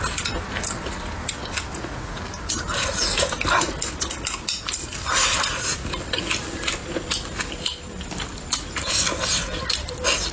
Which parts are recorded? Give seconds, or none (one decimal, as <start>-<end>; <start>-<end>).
0.0-1.7; 2.2-10.3